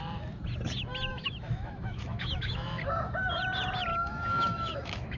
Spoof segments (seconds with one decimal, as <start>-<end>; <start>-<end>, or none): 1.1-2.8; 3.9-5.2